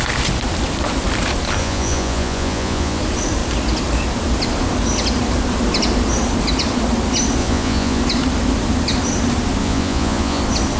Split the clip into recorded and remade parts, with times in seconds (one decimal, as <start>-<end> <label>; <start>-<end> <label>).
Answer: 0.0-1.6 recorded; 1.6-3.0 remade; 3.0-7.4 recorded; 7.4-8.0 remade; 8.0-9.6 recorded; 9.6-10.4 remade; 10.4-10.8 recorded